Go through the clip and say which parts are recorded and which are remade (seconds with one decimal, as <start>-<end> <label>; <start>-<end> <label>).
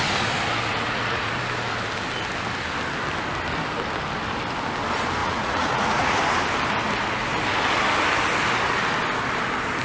0.0-0.7 recorded; 0.7-1.3 remade; 1.3-5.2 recorded; 5.2-6.2 remade; 6.2-9.8 recorded